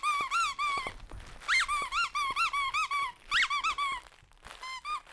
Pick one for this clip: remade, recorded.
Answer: recorded